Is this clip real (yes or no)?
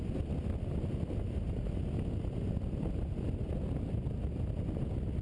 yes